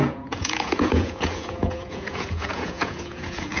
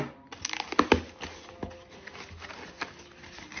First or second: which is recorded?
second